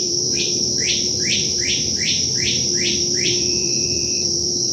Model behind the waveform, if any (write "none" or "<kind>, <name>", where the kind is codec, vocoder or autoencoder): vocoder, BigVGAN v2